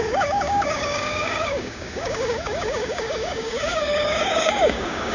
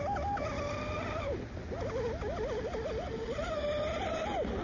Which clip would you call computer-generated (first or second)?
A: first